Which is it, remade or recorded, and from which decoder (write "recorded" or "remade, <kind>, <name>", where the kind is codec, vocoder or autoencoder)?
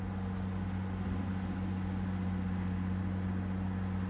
recorded